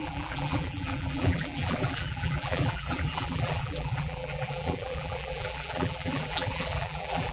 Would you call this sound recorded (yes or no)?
no